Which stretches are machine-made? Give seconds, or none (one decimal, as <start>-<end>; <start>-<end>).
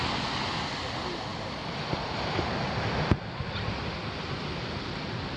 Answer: none